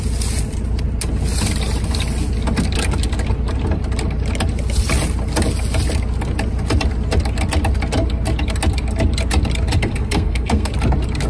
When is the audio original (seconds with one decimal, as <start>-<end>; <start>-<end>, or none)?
0.0-9.8; 10.7-11.3